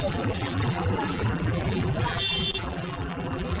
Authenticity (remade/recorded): remade